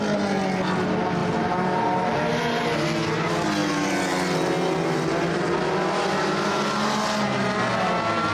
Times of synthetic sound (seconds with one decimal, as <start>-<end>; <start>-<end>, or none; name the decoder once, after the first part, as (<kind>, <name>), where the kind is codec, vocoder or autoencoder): 1.2-2.2 (vocoder, BigVGAN v2)